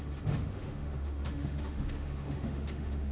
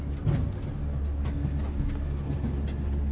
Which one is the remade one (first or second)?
first